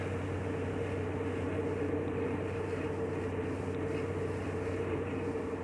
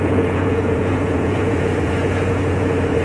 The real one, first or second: first